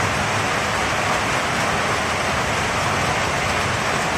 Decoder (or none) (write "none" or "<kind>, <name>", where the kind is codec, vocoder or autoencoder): none